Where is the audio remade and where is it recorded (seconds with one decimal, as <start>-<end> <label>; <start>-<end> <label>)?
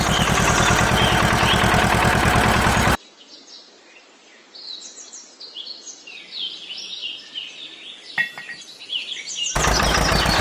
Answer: 0.0-10.4 recorded